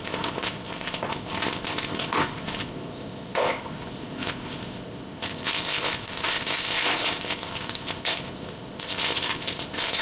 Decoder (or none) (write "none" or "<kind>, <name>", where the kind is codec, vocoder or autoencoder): codec, ZipCodec